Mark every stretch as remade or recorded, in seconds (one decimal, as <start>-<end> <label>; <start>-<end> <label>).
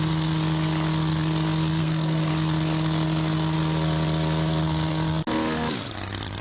0.0-1.8 recorded; 1.8-2.3 remade; 2.3-6.4 recorded